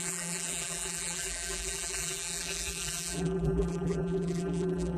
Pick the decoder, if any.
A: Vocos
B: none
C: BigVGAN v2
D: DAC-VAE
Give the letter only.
C